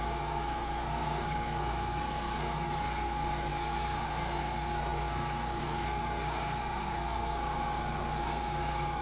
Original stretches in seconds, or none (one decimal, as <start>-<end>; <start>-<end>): none